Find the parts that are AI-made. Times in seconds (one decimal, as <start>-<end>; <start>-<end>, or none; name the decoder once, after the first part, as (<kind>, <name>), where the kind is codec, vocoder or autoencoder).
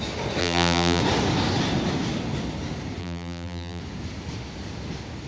0.4-1.0 (vocoder, BigVGAN v2); 3.0-3.8